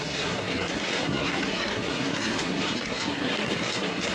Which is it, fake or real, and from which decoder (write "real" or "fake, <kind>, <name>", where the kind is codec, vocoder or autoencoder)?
fake, codec, SNAC